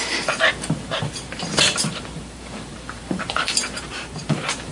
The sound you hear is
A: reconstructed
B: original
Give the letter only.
A